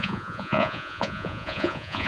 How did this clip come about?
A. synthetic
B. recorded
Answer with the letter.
A